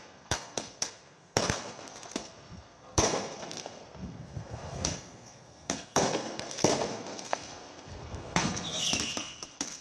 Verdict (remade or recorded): remade